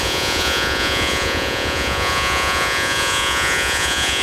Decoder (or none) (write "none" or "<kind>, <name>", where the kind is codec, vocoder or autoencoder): vocoder, Vocos